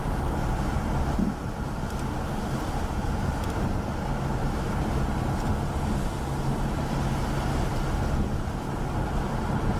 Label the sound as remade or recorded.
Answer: recorded